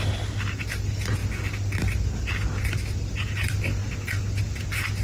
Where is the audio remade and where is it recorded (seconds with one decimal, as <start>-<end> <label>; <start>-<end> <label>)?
0.0-5.0 recorded